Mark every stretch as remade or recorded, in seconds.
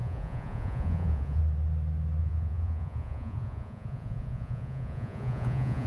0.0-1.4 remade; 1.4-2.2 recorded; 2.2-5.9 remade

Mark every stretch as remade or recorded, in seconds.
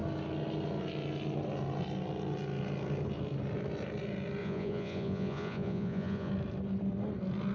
0.0-4.4 recorded; 4.4-6.3 remade; 6.3-7.5 recorded